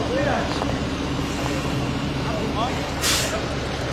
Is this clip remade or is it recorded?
recorded